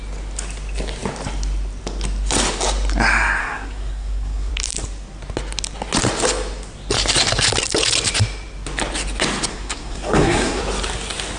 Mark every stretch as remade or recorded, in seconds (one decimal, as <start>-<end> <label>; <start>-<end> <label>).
0.0-3.4 recorded; 3.4-4.5 remade; 4.5-9.5 recorded; 9.5-10.6 remade; 10.6-11.4 recorded